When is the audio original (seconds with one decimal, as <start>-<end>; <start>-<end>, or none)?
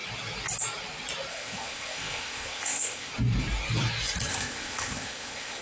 0.0-1.3; 3.1-4.3